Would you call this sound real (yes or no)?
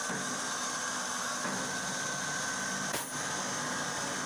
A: yes